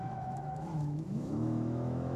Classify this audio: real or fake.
fake